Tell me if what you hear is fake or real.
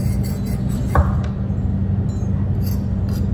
real